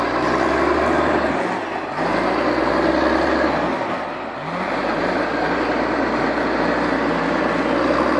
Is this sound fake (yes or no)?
no